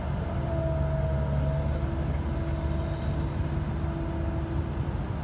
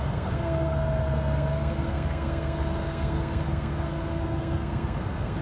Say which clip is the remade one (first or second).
second